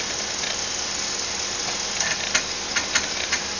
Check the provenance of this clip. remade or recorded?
remade